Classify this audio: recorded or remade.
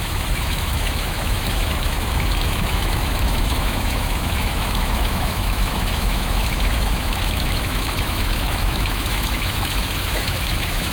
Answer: remade